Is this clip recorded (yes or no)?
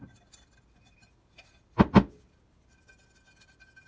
yes